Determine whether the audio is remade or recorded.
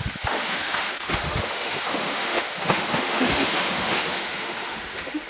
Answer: remade